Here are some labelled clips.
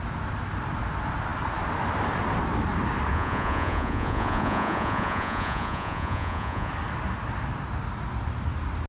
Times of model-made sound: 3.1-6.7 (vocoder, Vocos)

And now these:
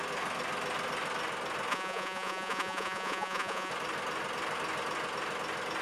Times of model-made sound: 1.7-3.7 (vocoder, Vocos)

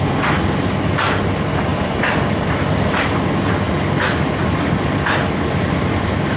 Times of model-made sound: none

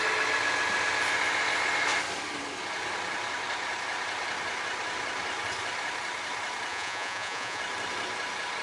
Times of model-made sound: 6.7-7.6 (vocoder, Vocos)

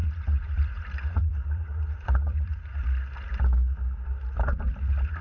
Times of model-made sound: 0.0-2.8 (vocoder, Vocos); 4.8-5.2

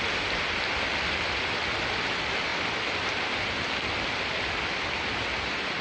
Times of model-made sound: none

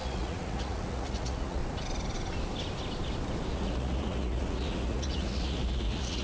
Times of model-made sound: 0.0-1.6 (vocoder, Vocos); 3.5-6.2